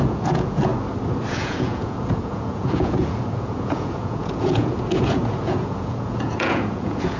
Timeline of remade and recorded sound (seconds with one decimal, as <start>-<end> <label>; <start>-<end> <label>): 0.0-0.7 remade; 0.7-1.3 recorded; 1.3-7.2 remade

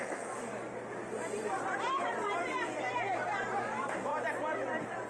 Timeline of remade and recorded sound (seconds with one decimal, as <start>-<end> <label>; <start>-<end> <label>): 0.0-0.5 remade; 0.5-3.6 recorded; 3.6-4.1 remade; 4.1-5.1 recorded

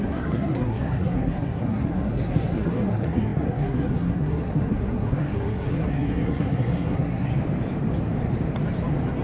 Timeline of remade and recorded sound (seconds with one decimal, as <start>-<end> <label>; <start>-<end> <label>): 0.0-7.3 remade; 7.3-9.2 recorded

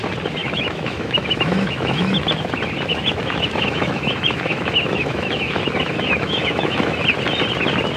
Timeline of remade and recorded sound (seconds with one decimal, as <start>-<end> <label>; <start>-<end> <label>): 0.0-0.4 recorded; 0.4-2.2 remade; 2.2-2.9 recorded; 2.9-7.0 remade; 7.0-8.0 recorded

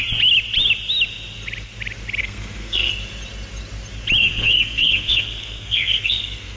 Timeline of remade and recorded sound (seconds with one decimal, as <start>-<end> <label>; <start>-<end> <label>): 0.0-2.2 recorded; 2.2-2.9 remade; 2.9-4.2 recorded; 4.2-6.6 remade

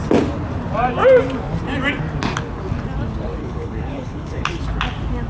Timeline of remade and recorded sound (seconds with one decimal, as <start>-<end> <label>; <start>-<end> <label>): 0.0-3.4 recorded; 3.4-4.6 remade; 4.6-5.3 recorded